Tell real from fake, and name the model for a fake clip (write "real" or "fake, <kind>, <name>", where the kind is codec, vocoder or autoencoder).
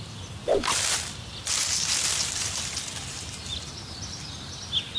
real